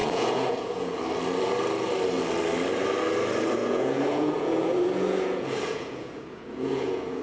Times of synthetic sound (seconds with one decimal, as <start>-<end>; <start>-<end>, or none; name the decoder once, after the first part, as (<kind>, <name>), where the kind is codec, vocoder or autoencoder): 0.0-1.0 (vocoder, Vocos); 3.6-7.2

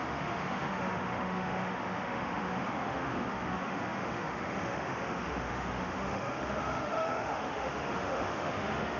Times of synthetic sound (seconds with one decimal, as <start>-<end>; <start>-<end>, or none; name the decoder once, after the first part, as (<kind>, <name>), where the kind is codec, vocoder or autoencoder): 0.0-9.0 (autoencoder, DAC-VAE)

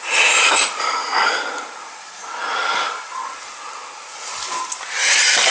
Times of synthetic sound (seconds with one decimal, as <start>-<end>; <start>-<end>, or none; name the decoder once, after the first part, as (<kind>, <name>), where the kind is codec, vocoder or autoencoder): none